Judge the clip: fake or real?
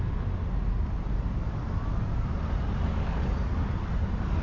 real